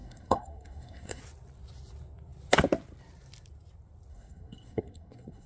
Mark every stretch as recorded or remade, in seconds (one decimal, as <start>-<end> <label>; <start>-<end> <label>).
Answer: 0.0-1.2 remade; 1.2-4.1 recorded; 4.1-5.5 remade